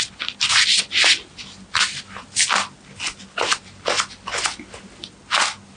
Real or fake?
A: real